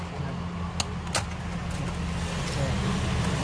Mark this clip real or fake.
real